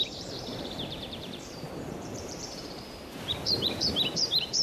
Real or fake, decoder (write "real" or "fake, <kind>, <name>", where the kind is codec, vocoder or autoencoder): fake, vocoder, BigVGAN v2